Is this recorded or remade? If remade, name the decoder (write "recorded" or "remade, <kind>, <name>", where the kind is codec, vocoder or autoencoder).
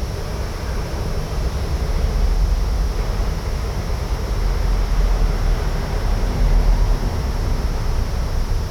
recorded